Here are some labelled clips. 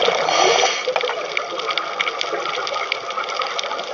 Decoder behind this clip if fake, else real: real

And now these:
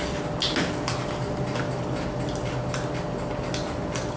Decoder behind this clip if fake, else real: real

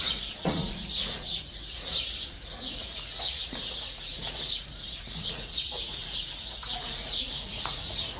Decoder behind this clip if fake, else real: fake, vocoder, Vocos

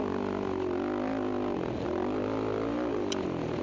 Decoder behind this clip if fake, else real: real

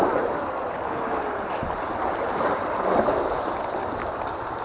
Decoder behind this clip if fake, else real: real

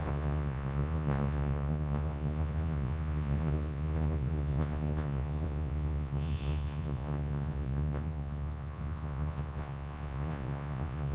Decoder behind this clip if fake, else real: fake, vocoder, Vocos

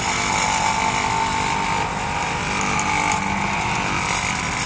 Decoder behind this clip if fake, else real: real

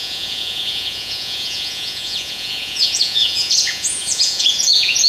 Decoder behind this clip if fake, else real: fake, vocoder, Vocos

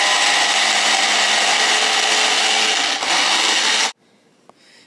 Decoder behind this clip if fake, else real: real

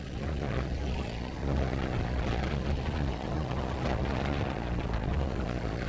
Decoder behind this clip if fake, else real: fake, vocoder, Vocos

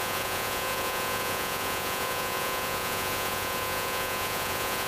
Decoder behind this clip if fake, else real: fake, vocoder, Vocos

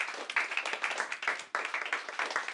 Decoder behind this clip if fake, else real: real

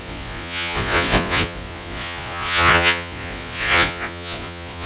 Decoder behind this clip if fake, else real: fake, vocoder, Vocos